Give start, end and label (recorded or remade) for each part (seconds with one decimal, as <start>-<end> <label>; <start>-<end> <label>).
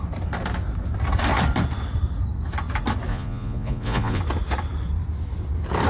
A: 0.0-3.1 recorded; 3.1-4.2 remade; 4.2-5.9 recorded